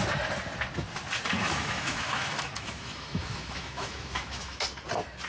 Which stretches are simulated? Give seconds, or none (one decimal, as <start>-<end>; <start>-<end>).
1.4-4.6